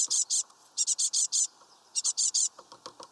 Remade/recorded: recorded